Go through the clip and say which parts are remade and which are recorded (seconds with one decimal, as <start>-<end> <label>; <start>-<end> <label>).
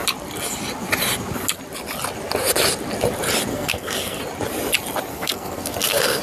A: 0.0-3.5 recorded; 3.5-4.2 remade; 4.2-5.1 recorded; 5.1-6.2 remade